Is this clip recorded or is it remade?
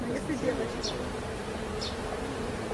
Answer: remade